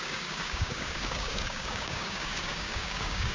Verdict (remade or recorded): remade